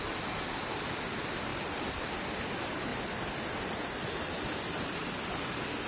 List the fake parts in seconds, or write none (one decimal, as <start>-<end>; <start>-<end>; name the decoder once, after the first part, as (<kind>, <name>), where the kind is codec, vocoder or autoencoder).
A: 1.5-2.3 (vocoder, BigVGAN v2); 2.9-4.4